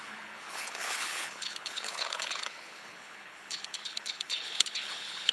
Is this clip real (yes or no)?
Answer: no